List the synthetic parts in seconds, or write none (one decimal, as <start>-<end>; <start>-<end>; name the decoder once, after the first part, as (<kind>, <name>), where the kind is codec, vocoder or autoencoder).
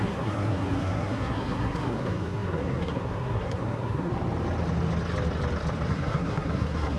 0.0-4.1 (codec, SNAC); 5.9-7.0